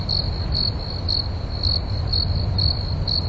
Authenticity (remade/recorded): recorded